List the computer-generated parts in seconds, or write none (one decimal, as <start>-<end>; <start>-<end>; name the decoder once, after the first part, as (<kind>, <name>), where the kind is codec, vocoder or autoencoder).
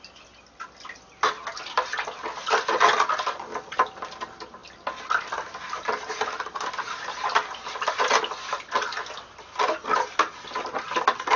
none